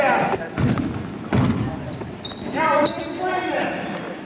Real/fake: real